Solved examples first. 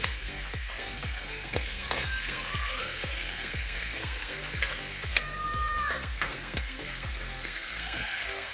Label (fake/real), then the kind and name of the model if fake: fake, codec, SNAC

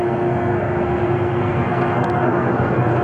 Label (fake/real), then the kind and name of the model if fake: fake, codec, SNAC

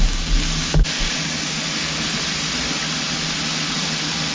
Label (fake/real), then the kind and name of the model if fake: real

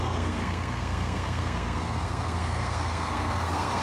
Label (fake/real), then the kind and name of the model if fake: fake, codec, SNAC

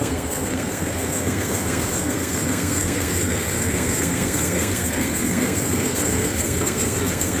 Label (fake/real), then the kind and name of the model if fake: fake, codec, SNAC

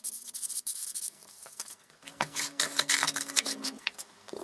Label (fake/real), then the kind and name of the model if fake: fake, codec, SNAC